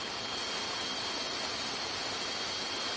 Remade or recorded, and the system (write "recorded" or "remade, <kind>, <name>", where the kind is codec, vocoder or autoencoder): recorded